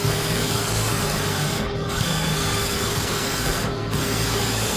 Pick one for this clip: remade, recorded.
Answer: remade